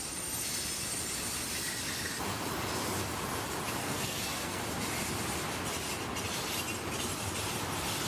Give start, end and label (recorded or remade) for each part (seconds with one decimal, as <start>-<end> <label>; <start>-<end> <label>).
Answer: 0.0-3.8 recorded; 3.8-4.6 remade; 4.6-8.1 recorded